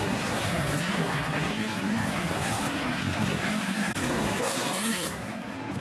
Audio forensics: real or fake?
fake